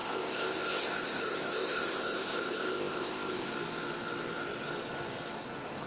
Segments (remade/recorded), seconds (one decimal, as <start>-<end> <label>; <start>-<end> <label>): 0.0-3.5 remade; 3.5-5.9 recorded